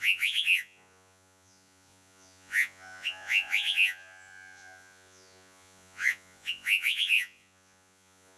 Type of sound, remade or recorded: remade